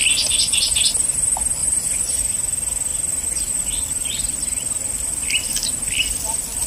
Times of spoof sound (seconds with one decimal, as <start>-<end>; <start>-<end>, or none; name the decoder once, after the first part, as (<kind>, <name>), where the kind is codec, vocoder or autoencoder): 1.6-2.2 (vocoder, BigVGAN v2)